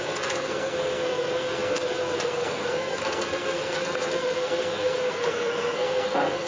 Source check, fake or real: fake